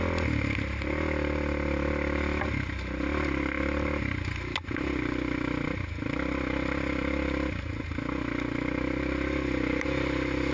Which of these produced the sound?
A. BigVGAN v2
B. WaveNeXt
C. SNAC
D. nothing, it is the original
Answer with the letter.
D